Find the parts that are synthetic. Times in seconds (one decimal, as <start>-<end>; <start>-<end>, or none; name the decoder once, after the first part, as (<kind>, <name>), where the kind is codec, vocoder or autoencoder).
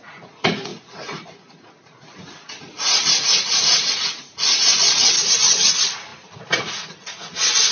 0.0-7.7 (vocoder, Vocos)